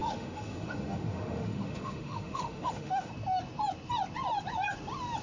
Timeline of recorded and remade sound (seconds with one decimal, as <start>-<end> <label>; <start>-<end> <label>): 0.0-3.1 remade; 3.1-5.2 recorded